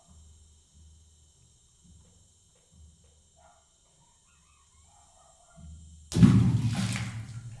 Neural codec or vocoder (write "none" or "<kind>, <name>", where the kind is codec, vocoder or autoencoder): none